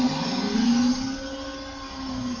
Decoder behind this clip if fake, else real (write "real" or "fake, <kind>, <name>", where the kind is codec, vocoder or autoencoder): real